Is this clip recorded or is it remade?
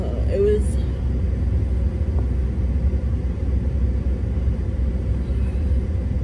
recorded